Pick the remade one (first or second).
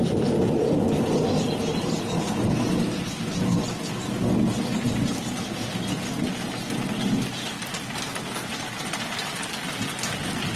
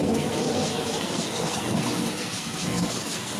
second